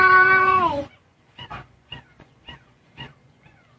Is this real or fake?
fake